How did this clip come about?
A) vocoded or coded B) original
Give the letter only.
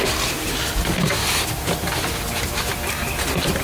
B